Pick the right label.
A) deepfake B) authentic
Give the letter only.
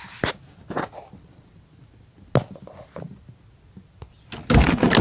B